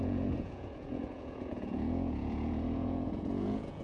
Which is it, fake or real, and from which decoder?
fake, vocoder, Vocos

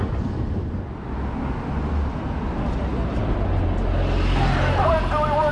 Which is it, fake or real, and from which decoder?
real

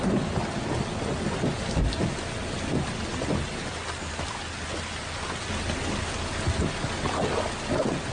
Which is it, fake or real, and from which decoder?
real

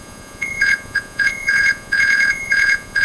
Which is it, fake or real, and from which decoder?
fake, vocoder, Vocos